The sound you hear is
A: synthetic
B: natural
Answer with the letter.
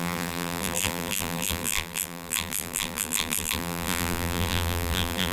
A